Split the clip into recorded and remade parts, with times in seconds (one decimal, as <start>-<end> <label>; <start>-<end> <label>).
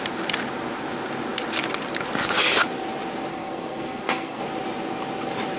0.0-3.3 recorded; 3.3-4.4 remade; 4.4-5.6 recorded